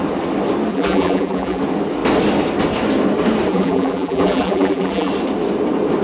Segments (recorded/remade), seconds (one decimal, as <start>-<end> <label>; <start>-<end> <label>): 0.0-0.7 recorded; 0.7-1.6 remade; 1.6-3.5 recorded; 3.5-5.1 remade; 5.1-6.0 recorded